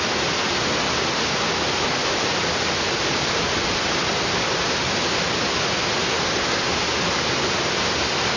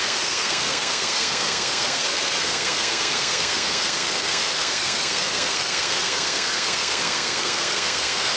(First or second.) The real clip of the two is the first